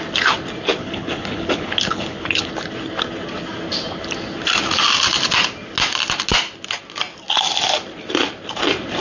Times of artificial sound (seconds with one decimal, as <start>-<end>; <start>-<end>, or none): 0.8-2.5